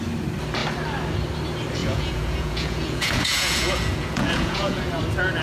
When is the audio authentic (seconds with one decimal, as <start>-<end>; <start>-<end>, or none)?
0.0-1.8; 5.0-5.4